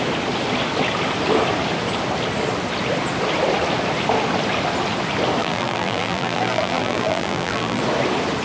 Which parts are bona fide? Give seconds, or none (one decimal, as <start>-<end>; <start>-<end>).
0.0-5.4; 7.8-8.4